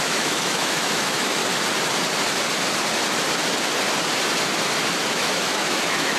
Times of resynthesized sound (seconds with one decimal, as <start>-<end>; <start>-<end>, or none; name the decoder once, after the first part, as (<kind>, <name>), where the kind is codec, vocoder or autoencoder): 0.0-1.4 (autoencoder, DAC-VAE); 5.1-6.2